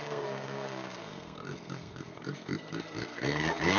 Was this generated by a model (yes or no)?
yes